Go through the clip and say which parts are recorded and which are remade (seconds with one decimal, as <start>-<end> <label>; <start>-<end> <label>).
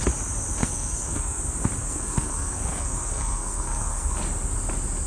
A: 0.0-0.6 recorded; 0.6-1.4 remade; 1.4-1.8 recorded; 1.8-4.2 remade; 4.2-5.1 recorded